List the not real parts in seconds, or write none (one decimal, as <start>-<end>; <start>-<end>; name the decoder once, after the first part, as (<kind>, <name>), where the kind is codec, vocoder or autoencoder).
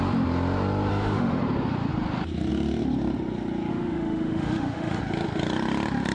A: 0.9-1.4 (autoencoder, DAC-VAE); 3.7-5.0